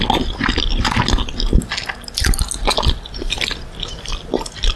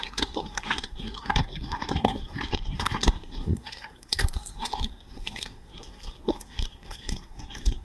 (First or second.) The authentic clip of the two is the first